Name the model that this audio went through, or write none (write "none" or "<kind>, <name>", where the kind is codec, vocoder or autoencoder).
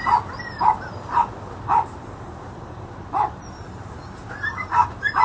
vocoder, BigVGAN v2